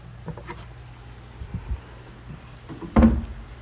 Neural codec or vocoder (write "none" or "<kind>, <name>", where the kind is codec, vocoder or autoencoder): none